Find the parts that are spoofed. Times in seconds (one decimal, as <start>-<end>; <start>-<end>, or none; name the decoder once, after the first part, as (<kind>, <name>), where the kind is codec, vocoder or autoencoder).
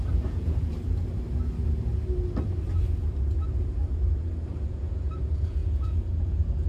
0.0-0.7 (vocoder, Vocos); 4.7-6.7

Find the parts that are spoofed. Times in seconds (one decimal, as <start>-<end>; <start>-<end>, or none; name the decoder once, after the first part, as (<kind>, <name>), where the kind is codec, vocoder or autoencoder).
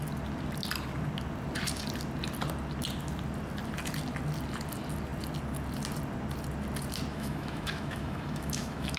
7.1-9.0 (autoencoder, DAC-VAE)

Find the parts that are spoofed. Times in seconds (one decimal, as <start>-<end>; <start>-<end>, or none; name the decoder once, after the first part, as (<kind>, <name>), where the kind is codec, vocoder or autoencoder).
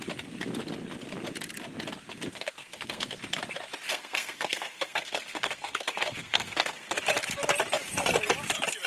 2.3-3.2 (codec, SNAC); 3.9-7.0